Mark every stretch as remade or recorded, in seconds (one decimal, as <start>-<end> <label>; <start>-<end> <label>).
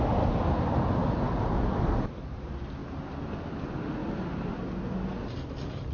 0.0-2.8 recorded; 2.8-3.4 remade; 3.4-5.9 recorded